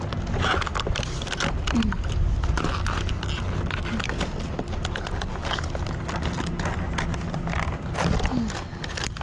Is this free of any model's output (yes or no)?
yes